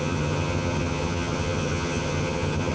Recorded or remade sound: remade